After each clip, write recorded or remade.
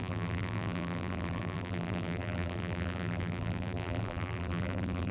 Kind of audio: remade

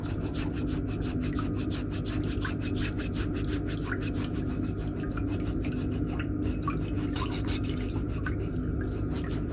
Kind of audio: recorded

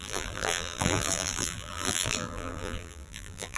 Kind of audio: remade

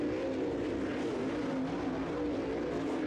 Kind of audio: recorded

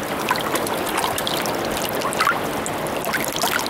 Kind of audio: recorded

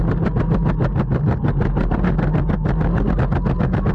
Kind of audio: recorded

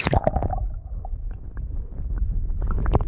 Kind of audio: recorded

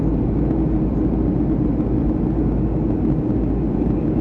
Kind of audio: recorded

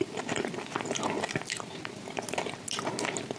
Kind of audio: recorded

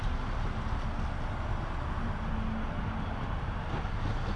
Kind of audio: recorded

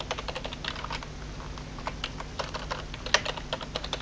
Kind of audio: recorded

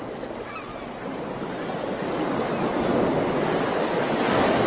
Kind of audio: recorded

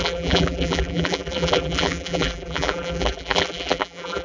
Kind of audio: remade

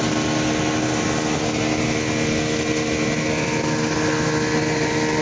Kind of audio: recorded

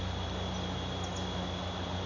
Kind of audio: recorded